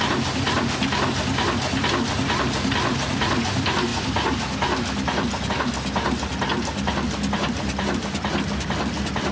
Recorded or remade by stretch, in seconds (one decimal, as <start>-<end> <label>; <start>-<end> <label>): 0.0-9.3 recorded